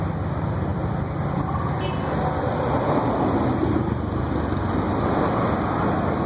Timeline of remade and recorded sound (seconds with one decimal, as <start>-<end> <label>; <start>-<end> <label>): 0.0-6.3 recorded